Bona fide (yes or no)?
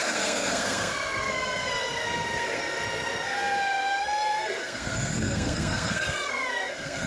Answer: no